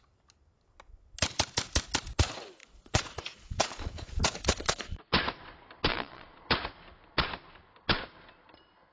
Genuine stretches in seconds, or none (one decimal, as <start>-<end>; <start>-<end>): 0.0-2.6; 5.0-5.9; 6.5-8.9